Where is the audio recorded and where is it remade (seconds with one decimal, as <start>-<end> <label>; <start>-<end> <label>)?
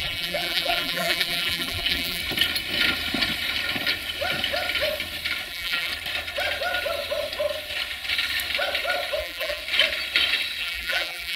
0.0-2.2 remade; 2.2-5.5 recorded; 5.5-5.9 remade; 5.9-9.2 recorded; 9.2-9.6 remade; 9.6-10.6 recorded; 10.6-11.4 remade